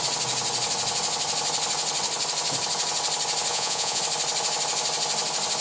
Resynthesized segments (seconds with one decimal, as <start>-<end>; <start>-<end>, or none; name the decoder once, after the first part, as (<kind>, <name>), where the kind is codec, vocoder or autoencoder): 3.5-4.0 (vocoder, Vocos)